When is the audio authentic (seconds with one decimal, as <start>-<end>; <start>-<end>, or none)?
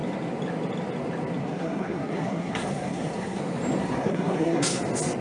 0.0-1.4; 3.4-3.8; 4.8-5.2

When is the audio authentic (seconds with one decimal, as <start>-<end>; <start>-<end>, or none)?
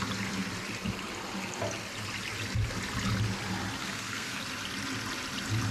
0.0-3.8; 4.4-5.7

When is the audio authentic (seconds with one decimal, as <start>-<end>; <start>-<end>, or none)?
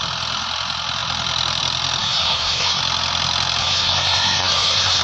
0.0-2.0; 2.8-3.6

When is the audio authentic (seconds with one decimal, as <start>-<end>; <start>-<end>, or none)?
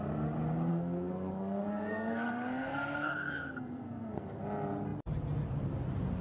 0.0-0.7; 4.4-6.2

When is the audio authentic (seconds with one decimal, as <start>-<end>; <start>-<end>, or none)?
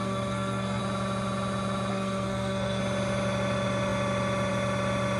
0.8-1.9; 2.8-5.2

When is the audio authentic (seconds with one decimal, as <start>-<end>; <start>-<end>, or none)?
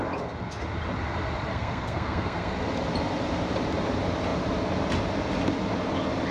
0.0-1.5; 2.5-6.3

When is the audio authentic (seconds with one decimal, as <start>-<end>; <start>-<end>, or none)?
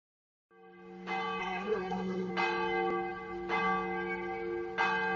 0.0-1.4; 2.3-5.2